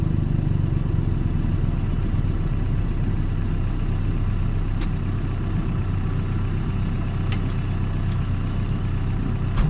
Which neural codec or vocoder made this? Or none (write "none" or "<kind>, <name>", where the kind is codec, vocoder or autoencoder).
none